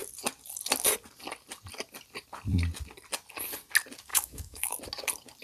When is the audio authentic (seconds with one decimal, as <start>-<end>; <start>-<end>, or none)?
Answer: 0.0-4.1; 4.8-5.4